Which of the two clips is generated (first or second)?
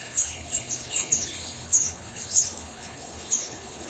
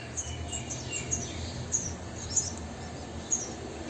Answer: first